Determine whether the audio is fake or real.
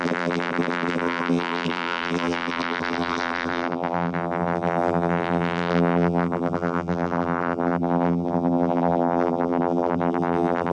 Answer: fake